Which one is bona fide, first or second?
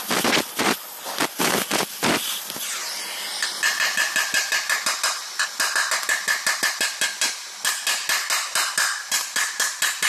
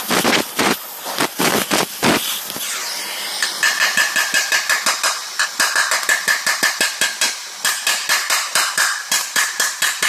first